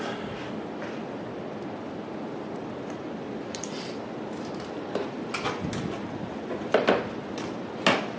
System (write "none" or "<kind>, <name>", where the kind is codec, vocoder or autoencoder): none